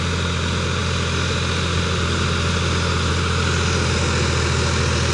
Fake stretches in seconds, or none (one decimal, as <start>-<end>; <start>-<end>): none